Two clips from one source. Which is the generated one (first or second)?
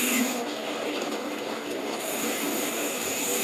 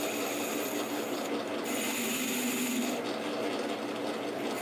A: first